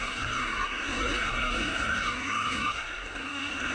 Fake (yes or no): yes